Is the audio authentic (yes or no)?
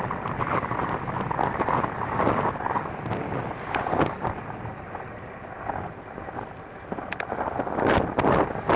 yes